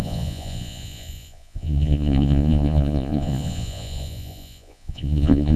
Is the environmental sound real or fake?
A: fake